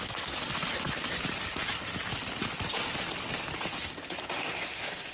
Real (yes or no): yes